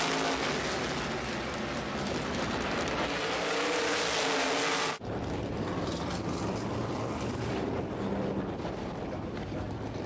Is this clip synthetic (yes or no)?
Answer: no